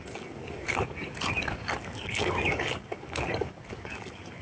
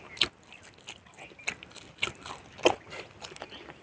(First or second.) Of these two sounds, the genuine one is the second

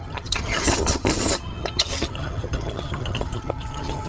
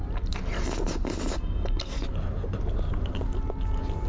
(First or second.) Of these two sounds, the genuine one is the second